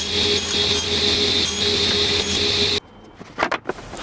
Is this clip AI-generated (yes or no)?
no